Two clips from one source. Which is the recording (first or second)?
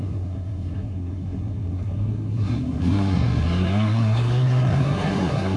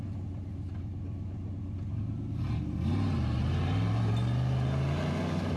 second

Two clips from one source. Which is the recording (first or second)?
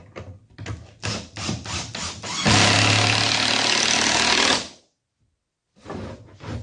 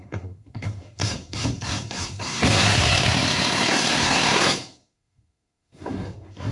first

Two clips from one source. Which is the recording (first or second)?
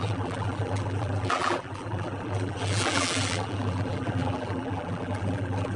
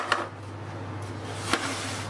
second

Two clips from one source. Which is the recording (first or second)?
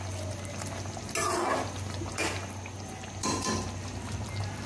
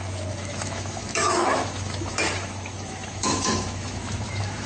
first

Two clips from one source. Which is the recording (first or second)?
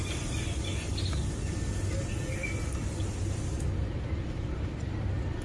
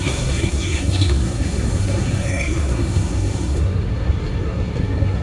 first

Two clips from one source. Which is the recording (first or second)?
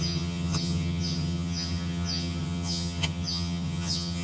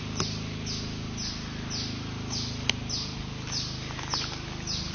second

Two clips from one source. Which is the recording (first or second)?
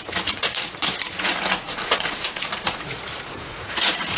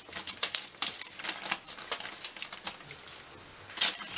second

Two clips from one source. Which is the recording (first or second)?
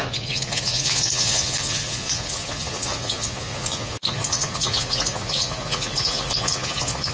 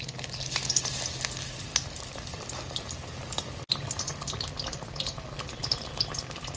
second